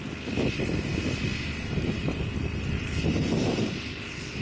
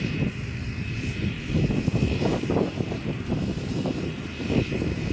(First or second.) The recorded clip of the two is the first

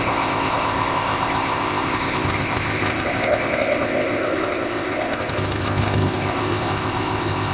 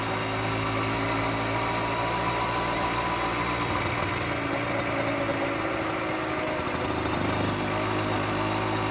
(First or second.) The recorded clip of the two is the second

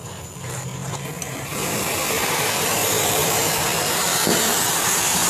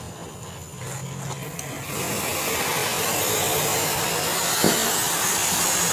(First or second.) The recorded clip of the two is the second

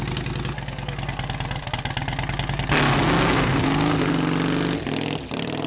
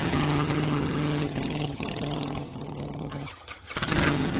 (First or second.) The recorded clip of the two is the first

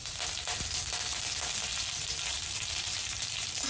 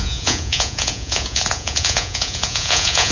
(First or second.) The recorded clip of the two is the first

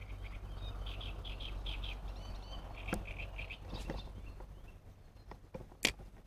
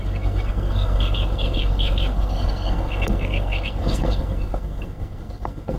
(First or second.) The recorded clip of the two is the first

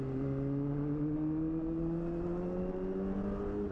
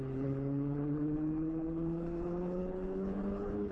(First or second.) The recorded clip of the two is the first